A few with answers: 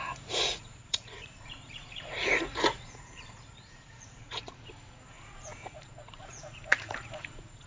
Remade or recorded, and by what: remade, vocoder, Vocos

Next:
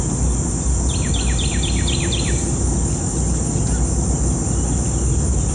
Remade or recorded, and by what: recorded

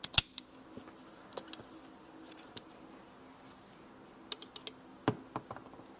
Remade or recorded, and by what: recorded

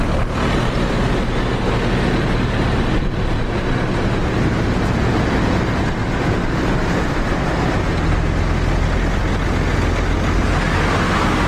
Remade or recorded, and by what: recorded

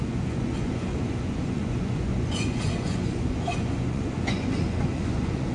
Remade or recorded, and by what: remade, vocoder, Vocos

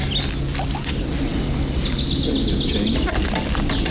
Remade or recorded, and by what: recorded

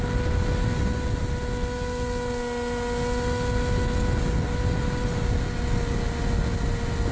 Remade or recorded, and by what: recorded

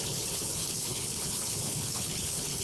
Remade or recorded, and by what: remade, codec, HILCodec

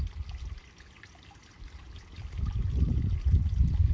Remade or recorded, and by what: recorded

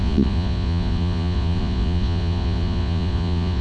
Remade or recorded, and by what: remade, vocoder, Vocos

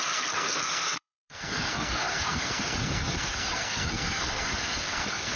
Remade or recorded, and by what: remade, codec, SNAC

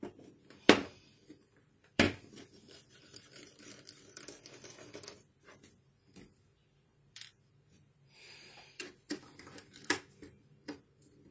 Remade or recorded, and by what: remade, vocoder, BigVGAN v2